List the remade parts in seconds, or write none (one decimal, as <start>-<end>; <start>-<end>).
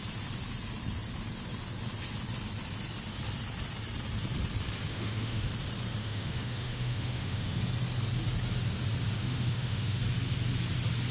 4.9-5.5; 6.0-7.6; 9.2-10.0